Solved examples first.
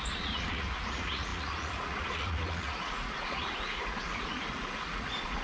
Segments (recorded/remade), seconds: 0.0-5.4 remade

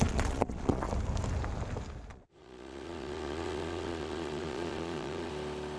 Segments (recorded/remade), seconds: 0.0-0.9 remade; 0.9-2.1 recorded; 2.1-5.3 remade; 5.3-5.8 recorded

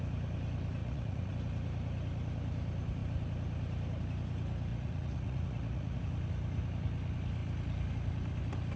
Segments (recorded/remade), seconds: 0.0-0.8 recorded; 0.8-1.3 remade; 1.3-4.7 recorded; 4.7-6.0 remade; 6.0-8.8 recorded

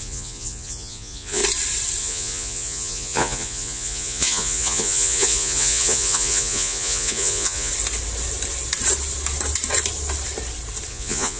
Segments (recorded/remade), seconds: 0.0-1.4 remade; 1.4-2.0 recorded; 2.0-7.7 remade; 7.7-10.9 recorded; 10.9-11.4 remade

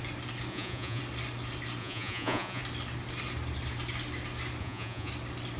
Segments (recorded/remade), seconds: 0.0-0.5 recorded; 0.5-1.0 remade; 1.0-1.8 recorded; 1.8-2.6 remade; 2.6-4.6 recorded; 4.6-5.1 remade; 5.1-5.6 recorded

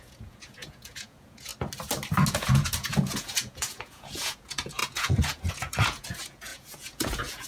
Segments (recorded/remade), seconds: 0.0-1.5 remade; 1.5-2.3 recorded; 2.3-7.5 remade

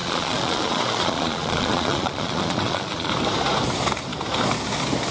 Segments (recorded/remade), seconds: 0.0-3.1 remade; 3.1-5.1 recorded